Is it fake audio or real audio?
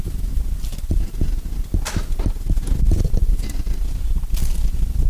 real